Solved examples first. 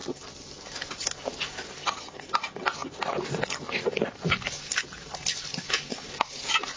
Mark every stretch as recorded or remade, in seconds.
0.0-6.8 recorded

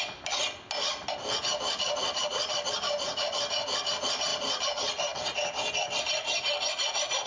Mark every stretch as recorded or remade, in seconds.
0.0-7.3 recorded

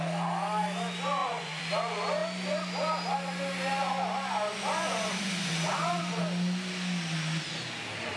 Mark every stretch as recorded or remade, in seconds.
0.0-1.2 recorded; 1.2-1.7 remade; 1.7-4.5 recorded; 4.5-6.0 remade; 6.0-8.2 recorded